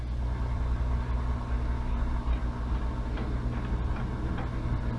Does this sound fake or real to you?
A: real